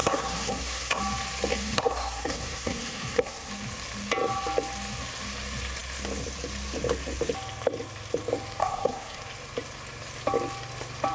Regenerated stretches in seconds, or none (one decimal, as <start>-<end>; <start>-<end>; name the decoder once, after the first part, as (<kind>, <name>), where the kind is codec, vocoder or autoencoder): 0.0-1.0 (codec, SNAC); 1.5-3.5; 8.6-9.2